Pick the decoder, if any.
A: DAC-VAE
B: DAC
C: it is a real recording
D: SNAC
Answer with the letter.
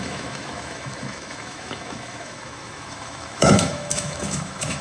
A